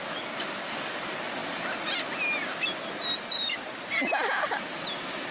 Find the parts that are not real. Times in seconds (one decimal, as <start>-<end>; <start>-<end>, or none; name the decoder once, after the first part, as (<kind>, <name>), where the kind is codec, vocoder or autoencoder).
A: none